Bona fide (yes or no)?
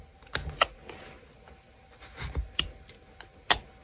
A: yes